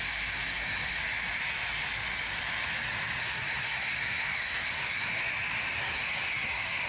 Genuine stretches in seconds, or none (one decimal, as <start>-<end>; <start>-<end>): 1.0-3.2; 5.2-5.8